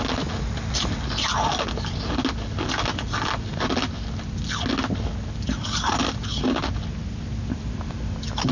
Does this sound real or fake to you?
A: real